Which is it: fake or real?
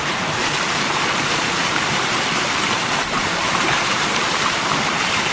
fake